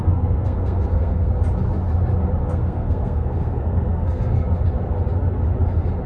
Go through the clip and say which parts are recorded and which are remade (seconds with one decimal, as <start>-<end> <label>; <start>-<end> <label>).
0.0-1.3 remade; 1.3-2.4 recorded; 2.4-4.3 remade; 4.3-6.1 recorded

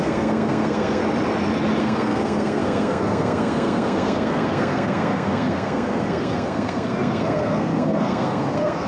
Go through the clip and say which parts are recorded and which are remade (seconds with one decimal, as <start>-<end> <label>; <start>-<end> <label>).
0.0-1.0 remade; 1.0-1.8 recorded; 1.8-8.9 remade

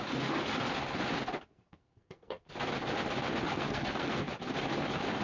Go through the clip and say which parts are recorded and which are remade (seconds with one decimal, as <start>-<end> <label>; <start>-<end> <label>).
0.0-1.5 recorded; 1.5-2.5 remade; 2.5-3.5 recorded; 3.5-4.3 remade; 4.3-5.2 recorded

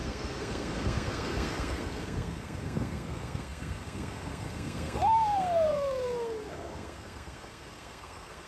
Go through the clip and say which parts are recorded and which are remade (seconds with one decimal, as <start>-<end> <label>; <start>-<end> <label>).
0.0-8.5 remade

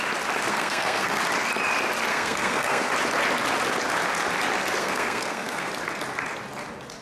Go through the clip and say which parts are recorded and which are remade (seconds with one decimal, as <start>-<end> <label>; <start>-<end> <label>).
0.0-0.5 recorded; 0.5-1.2 remade; 1.2-2.1 recorded; 2.1-2.9 remade; 2.9-4.8 recorded; 4.8-5.7 remade; 5.7-7.0 recorded